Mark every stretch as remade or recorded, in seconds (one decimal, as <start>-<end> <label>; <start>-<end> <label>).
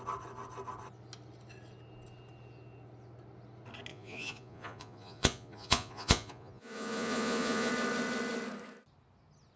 0.0-3.9 recorded; 3.9-7.7 remade; 7.7-9.6 recorded